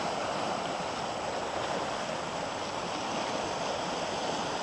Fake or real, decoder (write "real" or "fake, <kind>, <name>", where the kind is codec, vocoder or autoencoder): real